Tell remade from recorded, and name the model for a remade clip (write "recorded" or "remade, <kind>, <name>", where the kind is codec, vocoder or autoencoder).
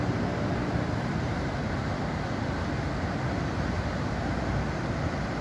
recorded